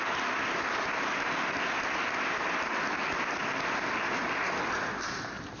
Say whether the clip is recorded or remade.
recorded